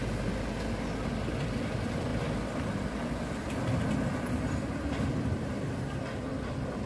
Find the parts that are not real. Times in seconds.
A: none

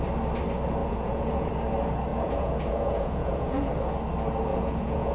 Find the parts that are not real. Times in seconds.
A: 0.8-1.5 (vocoder, Vocos); 2.1-3.7; 4.5-5.1

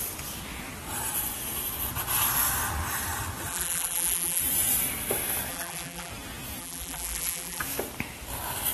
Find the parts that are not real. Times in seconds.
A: 3.5-4.4 (vocoder, BigVGAN v2); 5.5-6.1; 6.6-7.6

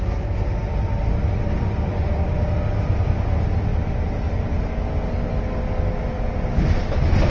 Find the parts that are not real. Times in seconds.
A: 0.6-2.1 (vocoder, BigVGAN v2)

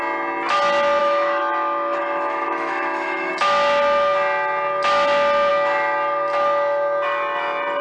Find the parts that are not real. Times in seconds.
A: 1.0-3.3 (autoencoder, DAC-VAE)